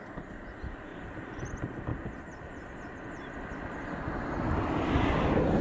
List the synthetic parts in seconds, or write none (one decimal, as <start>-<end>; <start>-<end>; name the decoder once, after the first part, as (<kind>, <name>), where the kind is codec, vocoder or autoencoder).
0.9-1.5 (vocoder, BigVGAN v2); 1.9-4.1